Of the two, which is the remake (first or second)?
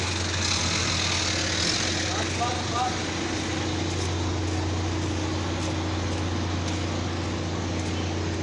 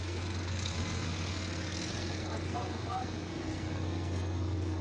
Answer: second